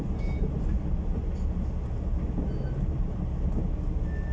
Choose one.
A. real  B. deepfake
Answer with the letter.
A